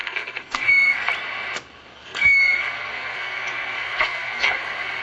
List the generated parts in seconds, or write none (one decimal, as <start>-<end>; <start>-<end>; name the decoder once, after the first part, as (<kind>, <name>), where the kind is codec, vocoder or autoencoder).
0.0-1.1 (codec, SNAC); 1.9-5.0